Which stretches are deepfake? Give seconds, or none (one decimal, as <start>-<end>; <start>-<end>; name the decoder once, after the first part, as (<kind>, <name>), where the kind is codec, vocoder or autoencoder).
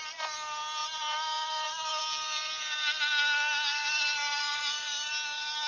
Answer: 0.8-2.0 (vocoder, BigVGAN v2); 3.8-5.1